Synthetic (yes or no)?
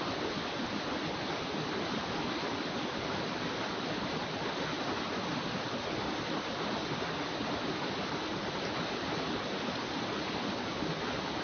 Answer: no